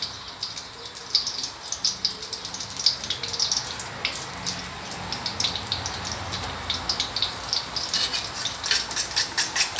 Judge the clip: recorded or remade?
recorded